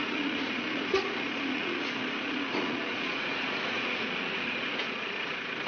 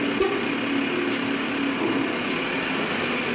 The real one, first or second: second